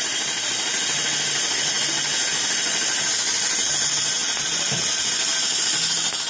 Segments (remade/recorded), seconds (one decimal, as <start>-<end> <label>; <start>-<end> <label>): 0.0-6.3 recorded